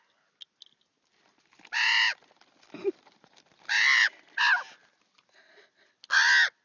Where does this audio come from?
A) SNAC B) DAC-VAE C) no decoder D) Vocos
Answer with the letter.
C